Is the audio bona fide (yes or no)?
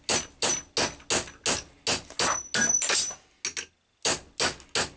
yes